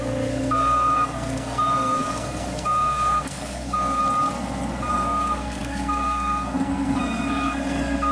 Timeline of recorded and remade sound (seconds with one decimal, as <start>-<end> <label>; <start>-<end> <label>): 0.0-4.0 remade; 4.0-4.9 recorded; 4.9-8.1 remade